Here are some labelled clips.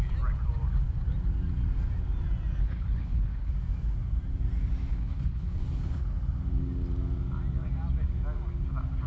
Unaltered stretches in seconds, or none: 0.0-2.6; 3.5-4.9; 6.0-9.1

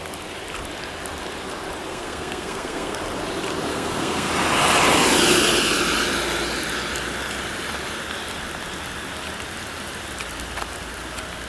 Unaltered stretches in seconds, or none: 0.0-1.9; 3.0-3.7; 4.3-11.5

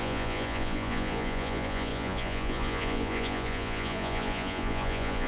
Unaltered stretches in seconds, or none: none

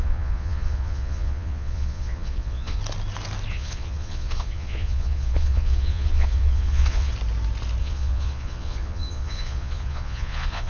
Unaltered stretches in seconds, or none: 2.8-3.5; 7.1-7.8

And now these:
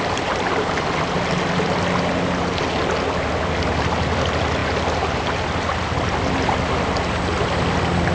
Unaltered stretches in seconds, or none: 0.0-8.1

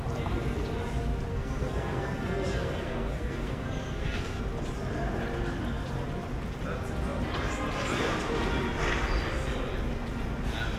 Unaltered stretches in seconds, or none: 0.0-1.3; 4.4-10.8

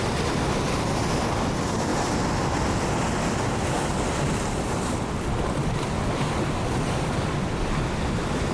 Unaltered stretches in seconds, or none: 0.0-8.5